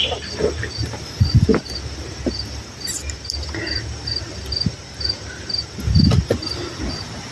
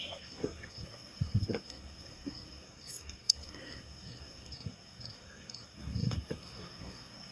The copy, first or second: second